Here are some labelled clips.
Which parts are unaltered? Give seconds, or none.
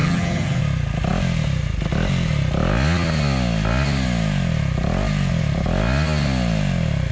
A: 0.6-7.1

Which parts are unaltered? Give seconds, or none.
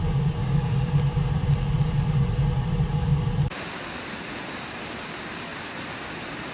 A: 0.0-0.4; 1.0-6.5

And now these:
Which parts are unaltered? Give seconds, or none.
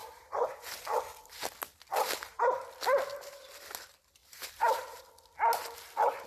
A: 0.8-1.9; 2.6-4.2; 5.0-6.3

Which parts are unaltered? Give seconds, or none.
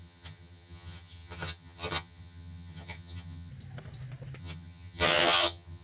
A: 3.5-4.4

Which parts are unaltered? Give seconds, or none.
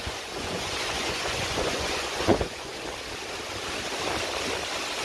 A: 2.7-5.0